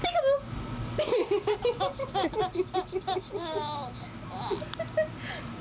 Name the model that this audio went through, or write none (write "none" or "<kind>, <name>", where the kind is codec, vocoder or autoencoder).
none